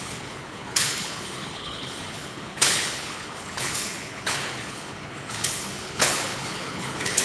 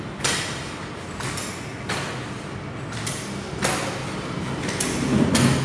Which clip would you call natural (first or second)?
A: second